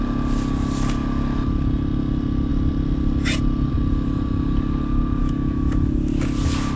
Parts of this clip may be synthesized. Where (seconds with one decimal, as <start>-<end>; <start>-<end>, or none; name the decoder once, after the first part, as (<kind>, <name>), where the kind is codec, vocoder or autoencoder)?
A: 5.2-6.1 (autoencoder, DAC-VAE)